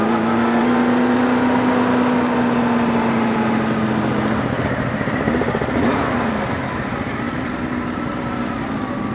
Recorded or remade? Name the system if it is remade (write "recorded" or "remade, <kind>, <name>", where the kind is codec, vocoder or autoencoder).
recorded